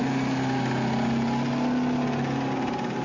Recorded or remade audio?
recorded